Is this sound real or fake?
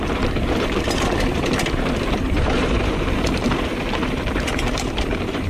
fake